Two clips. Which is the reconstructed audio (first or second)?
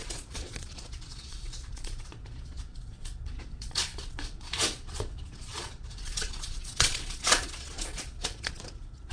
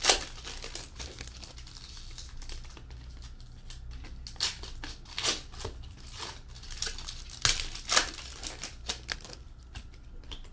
first